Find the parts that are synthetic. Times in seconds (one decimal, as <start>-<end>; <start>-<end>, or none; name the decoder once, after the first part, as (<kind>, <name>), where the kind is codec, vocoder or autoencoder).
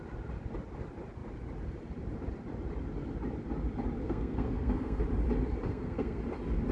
4.0-5.0 (codec, SNAC); 5.7-6.2